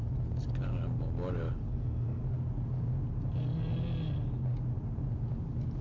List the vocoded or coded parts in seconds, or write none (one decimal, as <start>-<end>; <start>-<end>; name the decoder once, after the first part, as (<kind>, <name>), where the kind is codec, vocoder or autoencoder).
1.7-2.2 (codec, SNAC)